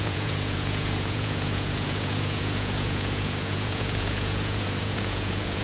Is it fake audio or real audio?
fake